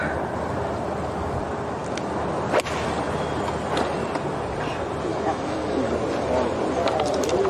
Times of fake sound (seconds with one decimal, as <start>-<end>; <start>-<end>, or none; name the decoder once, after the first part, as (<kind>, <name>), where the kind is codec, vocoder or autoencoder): 5.1-5.9 (autoencoder, DAC-VAE)